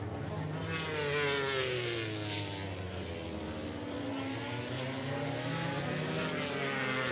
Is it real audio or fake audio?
real